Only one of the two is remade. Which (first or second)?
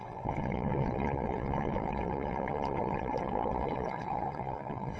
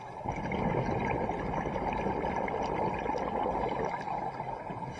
first